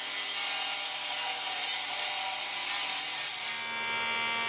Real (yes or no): yes